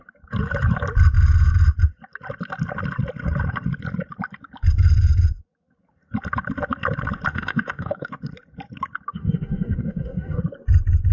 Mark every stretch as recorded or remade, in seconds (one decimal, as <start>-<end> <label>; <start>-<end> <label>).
0.0-7.3 recorded; 7.3-8.1 remade; 8.1-9.1 recorded; 9.1-10.4 remade; 10.4-11.1 recorded